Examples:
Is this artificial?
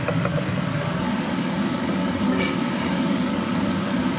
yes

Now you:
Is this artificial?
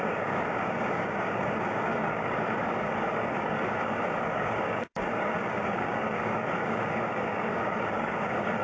yes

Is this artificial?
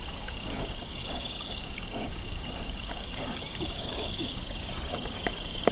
yes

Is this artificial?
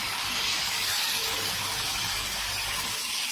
yes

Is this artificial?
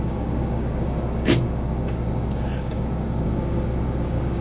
yes